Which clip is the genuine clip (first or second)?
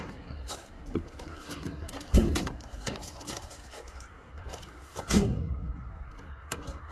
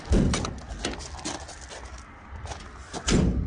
second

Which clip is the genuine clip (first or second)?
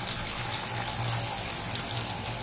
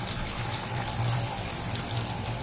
first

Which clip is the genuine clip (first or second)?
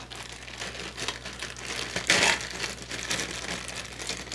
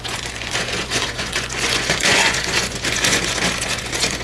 first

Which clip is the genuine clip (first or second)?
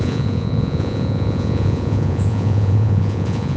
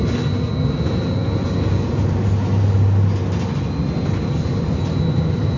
second